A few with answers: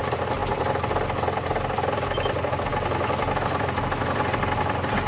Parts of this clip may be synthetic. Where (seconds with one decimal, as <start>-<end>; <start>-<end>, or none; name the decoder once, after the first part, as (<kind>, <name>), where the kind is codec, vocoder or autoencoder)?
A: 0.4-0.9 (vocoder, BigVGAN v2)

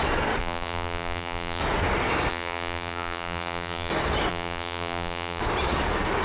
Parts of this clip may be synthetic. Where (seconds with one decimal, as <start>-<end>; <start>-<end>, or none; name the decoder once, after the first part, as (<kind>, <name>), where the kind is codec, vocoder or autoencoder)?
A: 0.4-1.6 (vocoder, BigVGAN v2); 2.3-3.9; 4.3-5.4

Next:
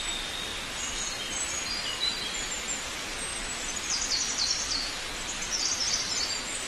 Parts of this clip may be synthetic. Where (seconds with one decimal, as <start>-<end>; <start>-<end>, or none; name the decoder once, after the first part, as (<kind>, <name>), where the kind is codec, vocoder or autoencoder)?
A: 3.3-5.4 (vocoder, BigVGAN v2)